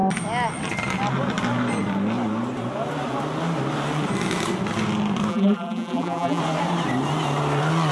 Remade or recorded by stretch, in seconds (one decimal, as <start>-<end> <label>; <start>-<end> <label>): 0.0-5.3 recorded; 5.3-6.4 remade; 6.4-7.9 recorded